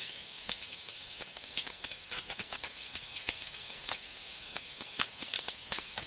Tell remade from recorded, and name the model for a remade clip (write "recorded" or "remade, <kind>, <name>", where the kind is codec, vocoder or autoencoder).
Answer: remade, codec, SNAC